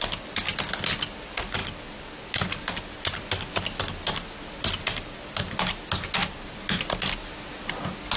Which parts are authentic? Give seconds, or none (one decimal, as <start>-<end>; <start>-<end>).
0.0-8.2